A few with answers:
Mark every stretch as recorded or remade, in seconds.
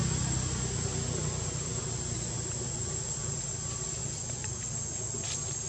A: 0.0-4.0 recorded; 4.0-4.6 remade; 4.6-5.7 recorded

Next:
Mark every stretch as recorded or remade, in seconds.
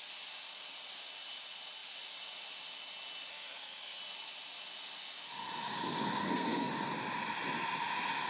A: 0.0-3.3 recorded; 3.3-4.0 remade; 4.0-6.2 recorded; 6.2-6.7 remade; 6.7-8.3 recorded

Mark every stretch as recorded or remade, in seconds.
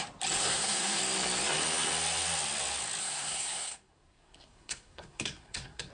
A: 0.0-0.4 recorded; 0.4-1.0 remade; 1.0-3.0 recorded; 3.0-5.9 remade